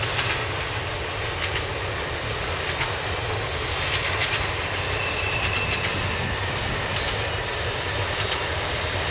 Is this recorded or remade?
recorded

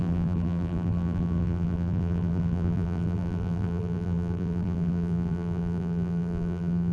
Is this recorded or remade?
remade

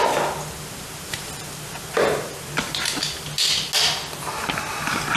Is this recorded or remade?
recorded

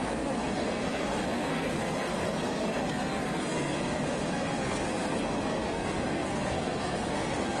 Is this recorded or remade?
remade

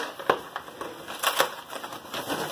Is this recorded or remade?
recorded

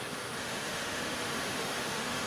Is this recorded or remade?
remade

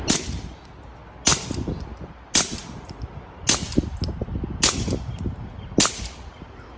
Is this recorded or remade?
recorded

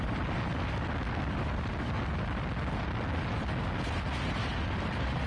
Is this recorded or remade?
recorded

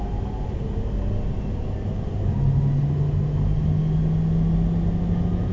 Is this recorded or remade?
recorded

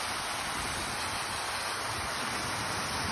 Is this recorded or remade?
recorded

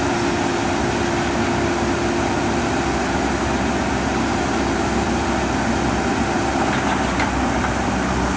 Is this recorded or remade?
recorded